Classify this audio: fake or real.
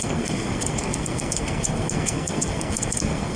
fake